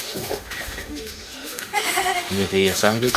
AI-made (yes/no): yes